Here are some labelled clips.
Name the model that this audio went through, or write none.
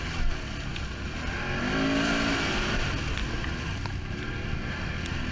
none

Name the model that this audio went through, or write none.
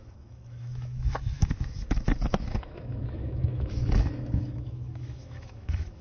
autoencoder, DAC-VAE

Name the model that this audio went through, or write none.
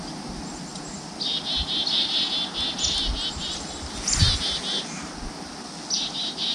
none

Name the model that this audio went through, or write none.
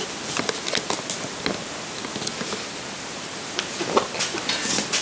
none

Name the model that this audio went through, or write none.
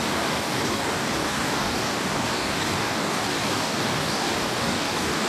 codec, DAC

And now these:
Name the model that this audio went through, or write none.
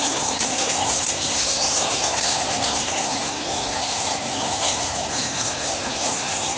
codec, SNAC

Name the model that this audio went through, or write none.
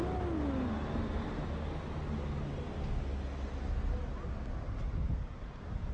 none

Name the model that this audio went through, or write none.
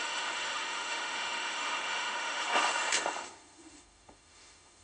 autoencoder, DAC-VAE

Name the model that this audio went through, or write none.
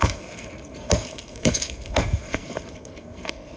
codec, SNAC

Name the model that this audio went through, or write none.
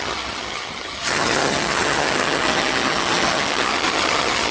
vocoder, HiFi-GAN